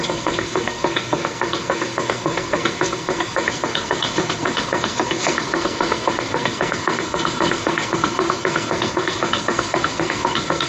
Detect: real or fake fake